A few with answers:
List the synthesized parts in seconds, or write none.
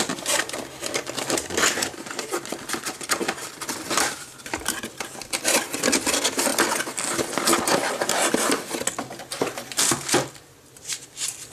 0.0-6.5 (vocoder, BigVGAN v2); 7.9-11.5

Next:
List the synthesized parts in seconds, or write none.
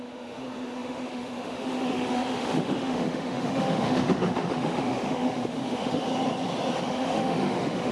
0.0-6.1 (autoencoder, DAC-VAE); 6.8-7.9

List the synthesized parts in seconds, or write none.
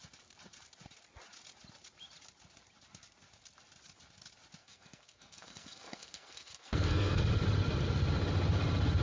4.6-7.2 (codec, SNAC)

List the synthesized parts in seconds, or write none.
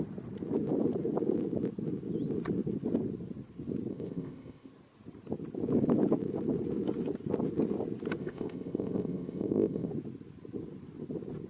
3.9-4.7 (codec, ZipCodec); 8.2-9.9